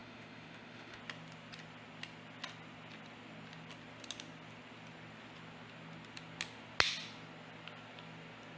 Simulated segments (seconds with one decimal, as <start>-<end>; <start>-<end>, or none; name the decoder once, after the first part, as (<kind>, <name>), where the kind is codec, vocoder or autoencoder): 0.0-1.0 (autoencoder, DAC-VAE)